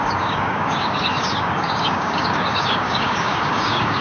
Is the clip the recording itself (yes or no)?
no